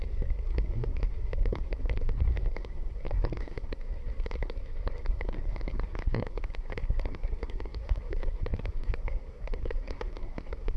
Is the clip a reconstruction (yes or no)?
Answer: yes